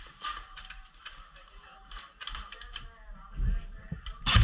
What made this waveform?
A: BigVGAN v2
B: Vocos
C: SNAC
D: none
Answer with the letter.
D